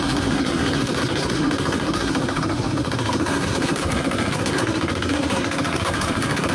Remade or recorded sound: remade